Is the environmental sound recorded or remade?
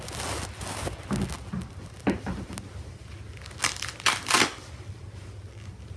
recorded